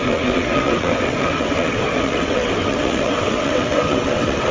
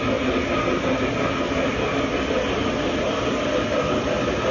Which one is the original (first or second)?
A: second